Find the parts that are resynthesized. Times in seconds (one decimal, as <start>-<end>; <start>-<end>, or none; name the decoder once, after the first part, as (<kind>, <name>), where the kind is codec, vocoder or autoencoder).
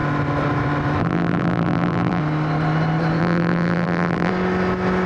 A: 1.0-2.2 (vocoder, BigVGAN v2); 3.2-4.3